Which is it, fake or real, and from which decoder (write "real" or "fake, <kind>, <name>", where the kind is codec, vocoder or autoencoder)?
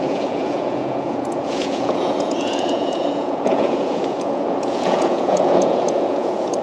fake, vocoder, Vocos